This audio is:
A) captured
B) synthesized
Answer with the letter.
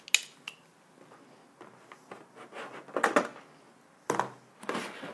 A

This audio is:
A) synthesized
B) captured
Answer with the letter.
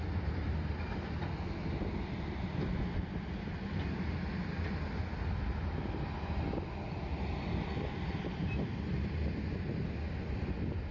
B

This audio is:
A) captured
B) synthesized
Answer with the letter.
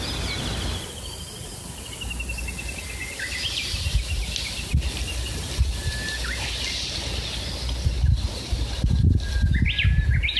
A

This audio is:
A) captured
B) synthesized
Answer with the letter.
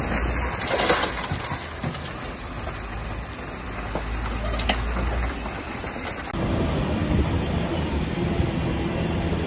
A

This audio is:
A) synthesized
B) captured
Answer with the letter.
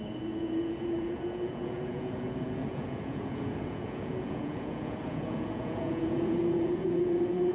A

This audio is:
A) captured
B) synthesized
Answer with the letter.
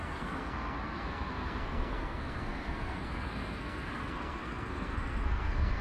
B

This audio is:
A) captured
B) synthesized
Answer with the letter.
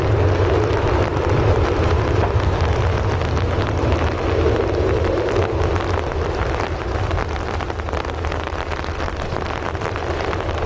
A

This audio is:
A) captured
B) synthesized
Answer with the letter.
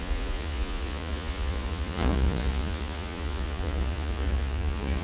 B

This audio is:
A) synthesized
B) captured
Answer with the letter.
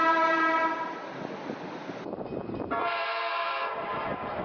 A